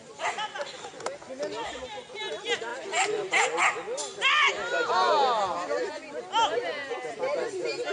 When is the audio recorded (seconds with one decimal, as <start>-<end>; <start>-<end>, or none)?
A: 0.0-7.9

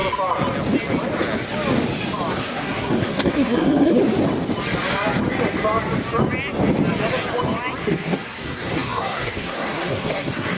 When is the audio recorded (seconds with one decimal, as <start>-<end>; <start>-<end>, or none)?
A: 0.0-2.4; 4.0-7.8

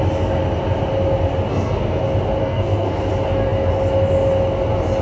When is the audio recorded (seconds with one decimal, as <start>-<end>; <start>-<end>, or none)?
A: 0.0-1.5; 2.0-2.4; 3.1-5.0